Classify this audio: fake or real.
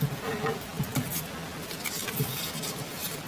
real